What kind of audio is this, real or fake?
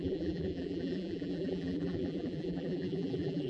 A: fake